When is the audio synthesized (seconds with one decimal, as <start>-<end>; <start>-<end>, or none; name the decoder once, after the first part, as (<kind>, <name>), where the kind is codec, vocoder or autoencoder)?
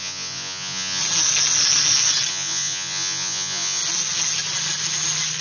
0.0-1.0 (vocoder, Vocos); 2.3-3.8